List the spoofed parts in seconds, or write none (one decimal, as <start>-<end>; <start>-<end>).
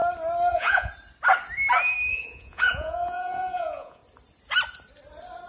0.5-0.9; 2.1-4.0